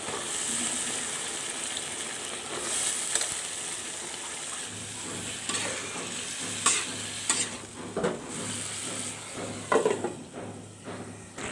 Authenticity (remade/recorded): recorded